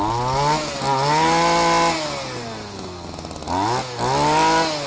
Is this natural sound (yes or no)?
yes